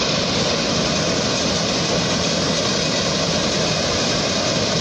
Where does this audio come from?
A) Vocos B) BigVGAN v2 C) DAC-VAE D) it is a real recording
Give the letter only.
D